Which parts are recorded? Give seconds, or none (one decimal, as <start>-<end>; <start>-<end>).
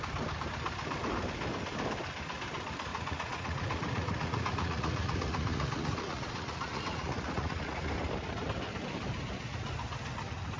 0.0-2.9; 7.9-10.6